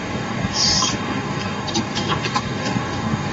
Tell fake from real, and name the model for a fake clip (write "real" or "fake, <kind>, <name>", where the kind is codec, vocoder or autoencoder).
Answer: fake, codec, DAC